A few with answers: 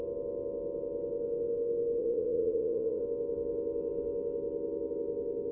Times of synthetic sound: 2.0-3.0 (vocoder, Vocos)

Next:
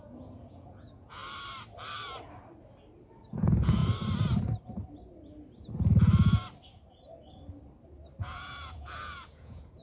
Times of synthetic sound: 0.0-1.2 (vocoder, Vocos); 3.3-3.8; 8.2-9.8

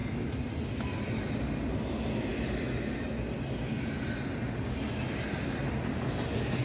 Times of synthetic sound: none

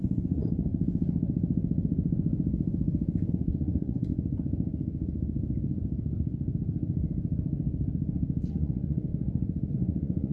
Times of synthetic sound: 0.0-0.7 (vocoder, Vocos); 3.3-4.1; 8.5-9.1; 9.7-10.3

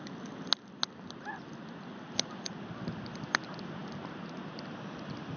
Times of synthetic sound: none

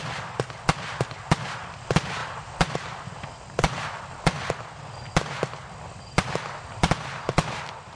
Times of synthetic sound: none

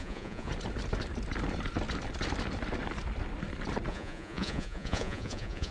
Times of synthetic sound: 0.0-0.5 (vocoder, Vocos); 3.9-5.7

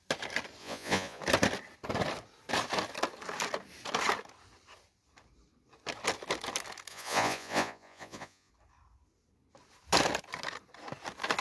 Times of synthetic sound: 0.6-1.2 (vocoder, Vocos); 6.9-8.5